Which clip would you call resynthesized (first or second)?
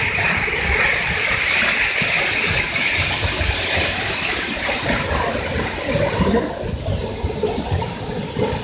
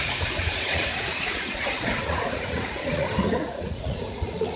second